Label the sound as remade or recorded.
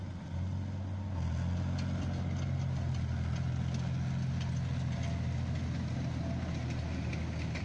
recorded